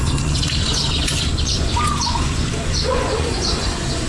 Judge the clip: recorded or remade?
remade